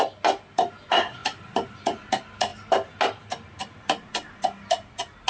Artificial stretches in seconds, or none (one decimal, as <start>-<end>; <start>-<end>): none